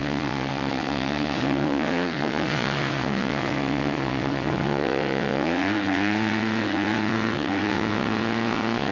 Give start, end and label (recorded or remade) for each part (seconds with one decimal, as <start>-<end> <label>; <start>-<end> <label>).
0.0-8.9 remade